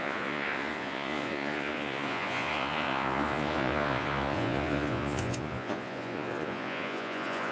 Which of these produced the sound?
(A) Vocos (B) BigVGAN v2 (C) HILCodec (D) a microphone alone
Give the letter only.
A